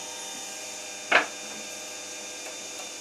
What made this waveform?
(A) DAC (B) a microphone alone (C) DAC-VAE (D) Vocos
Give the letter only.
B